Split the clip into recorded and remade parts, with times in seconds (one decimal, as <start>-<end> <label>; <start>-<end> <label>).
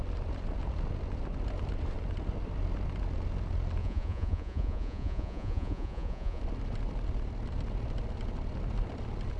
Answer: 0.0-3.8 recorded; 3.8-6.4 remade; 6.4-9.4 recorded